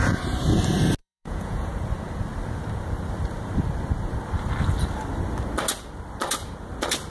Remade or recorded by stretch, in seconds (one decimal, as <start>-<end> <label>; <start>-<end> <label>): 0.0-1.0 recorded; 1.0-1.7 remade; 1.7-7.1 recorded